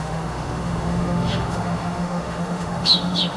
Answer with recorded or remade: remade